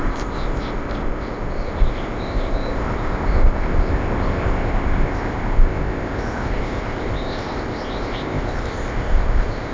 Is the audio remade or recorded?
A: remade